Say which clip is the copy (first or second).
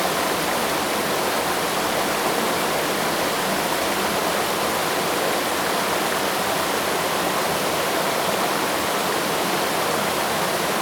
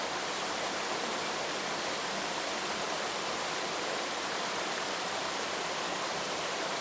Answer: second